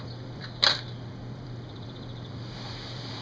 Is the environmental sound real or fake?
fake